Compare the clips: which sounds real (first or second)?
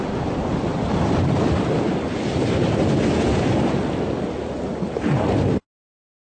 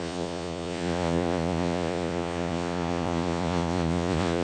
first